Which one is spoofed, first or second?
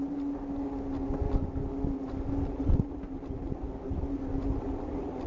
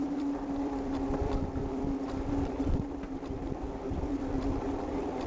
second